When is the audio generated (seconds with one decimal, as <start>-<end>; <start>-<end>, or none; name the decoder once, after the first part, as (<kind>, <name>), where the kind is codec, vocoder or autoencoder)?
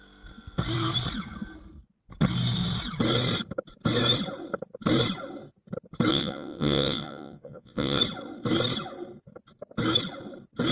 6.1-8.0 (vocoder, WaveNeXt)